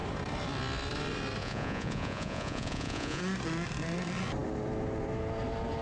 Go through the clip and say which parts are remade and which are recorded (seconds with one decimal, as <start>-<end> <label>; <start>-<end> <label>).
0.0-1.4 recorded; 1.4-3.2 remade; 3.2-5.8 recorded